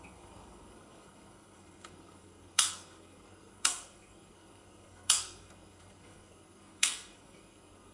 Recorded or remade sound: remade